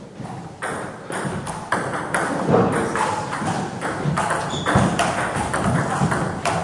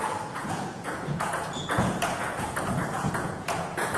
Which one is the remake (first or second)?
second